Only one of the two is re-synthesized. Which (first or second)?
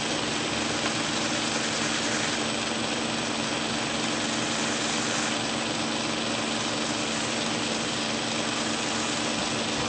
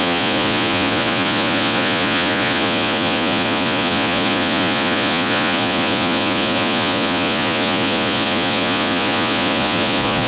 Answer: second